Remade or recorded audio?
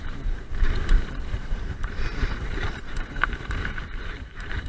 remade